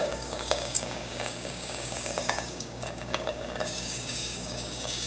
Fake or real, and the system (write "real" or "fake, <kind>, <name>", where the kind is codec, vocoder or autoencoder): fake, codec, DAC